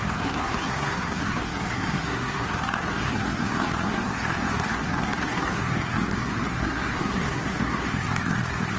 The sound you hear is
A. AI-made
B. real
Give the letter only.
A